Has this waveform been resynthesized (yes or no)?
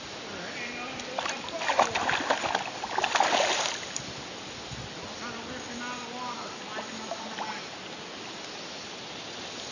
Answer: no